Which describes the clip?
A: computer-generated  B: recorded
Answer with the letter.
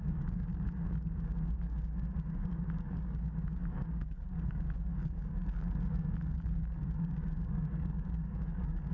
A